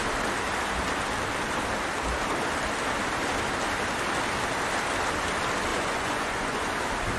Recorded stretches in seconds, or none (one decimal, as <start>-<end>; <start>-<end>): 0.0-5.7; 6.7-7.2